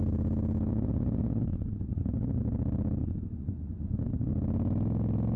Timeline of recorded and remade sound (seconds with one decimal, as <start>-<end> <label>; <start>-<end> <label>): 0.0-0.7 recorded; 0.7-2.4 remade; 2.4-3.0 recorded; 3.0-4.3 remade; 4.3-5.4 recorded

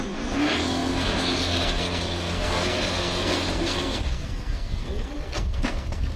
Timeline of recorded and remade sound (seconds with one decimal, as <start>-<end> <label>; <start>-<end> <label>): 0.0-6.2 remade

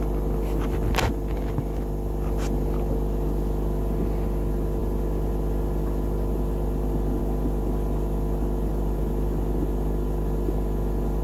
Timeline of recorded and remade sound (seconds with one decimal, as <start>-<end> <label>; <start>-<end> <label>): 0.0-11.2 recorded

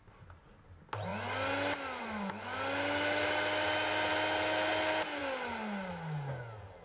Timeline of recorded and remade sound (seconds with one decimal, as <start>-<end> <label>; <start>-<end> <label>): 0.0-6.8 recorded

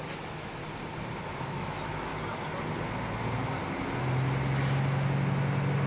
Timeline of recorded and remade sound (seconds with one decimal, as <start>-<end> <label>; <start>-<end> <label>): 0.0-0.6 remade; 0.6-1.3 recorded; 1.3-2.1 remade; 2.1-5.9 recorded